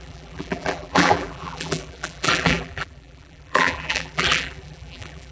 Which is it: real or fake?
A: fake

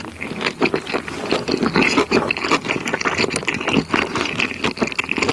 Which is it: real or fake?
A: real